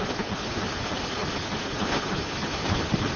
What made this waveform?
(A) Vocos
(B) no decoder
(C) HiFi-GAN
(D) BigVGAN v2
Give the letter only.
B